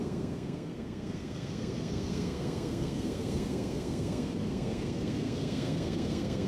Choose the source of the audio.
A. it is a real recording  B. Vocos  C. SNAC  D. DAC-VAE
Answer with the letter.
C